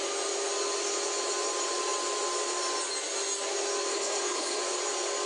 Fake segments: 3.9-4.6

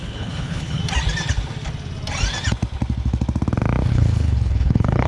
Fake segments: 0.0-0.8; 3.9-5.1

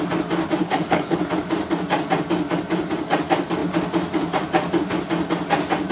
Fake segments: 0.6-1.2